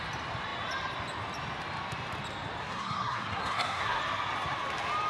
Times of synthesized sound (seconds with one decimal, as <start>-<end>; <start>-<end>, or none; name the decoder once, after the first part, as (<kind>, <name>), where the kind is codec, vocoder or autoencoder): 2.6-4.0 (codec, SNAC)